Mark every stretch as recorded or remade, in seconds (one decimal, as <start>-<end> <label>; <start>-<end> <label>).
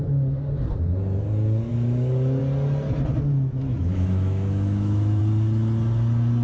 0.0-1.7 recorded; 1.7-2.4 remade; 2.4-3.7 recorded; 3.7-5.2 remade; 5.2-6.4 recorded